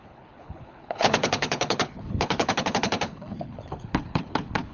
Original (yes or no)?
no